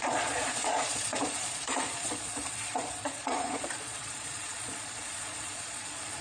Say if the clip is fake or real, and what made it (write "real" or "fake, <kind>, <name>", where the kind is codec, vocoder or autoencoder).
fake, vocoder, Vocos